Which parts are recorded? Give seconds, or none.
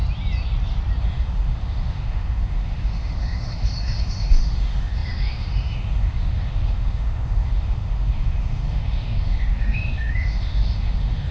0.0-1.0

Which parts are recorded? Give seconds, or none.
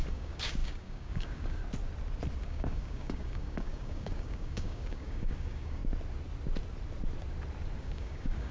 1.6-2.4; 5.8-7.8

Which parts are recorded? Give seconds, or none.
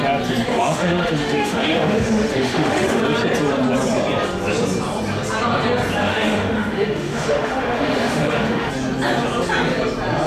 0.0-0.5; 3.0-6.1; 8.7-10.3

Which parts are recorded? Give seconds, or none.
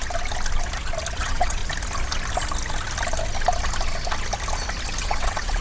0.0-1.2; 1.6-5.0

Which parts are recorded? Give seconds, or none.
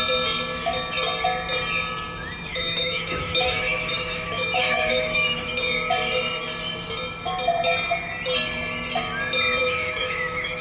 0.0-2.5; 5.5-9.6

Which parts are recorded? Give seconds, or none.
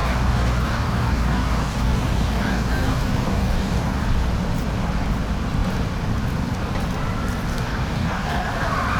4.0-7.5; 8.5-9.0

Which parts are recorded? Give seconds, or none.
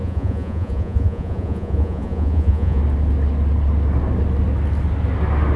2.8-5.6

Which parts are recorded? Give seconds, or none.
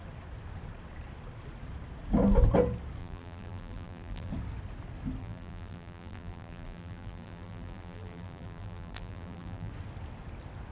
0.0-3.0; 4.3-5.2; 9.7-10.7